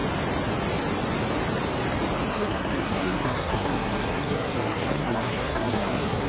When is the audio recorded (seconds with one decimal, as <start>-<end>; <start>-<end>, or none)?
0.0-2.3